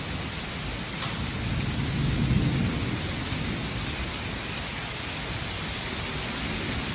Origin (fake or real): real